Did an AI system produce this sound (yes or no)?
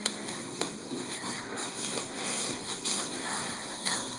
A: yes